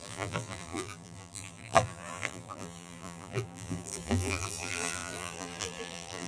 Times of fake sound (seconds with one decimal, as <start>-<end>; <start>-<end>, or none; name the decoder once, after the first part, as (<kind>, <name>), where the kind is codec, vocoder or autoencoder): 0.0-6.3 (vocoder, BigVGAN v2)